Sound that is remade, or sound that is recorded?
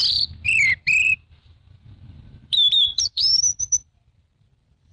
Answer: remade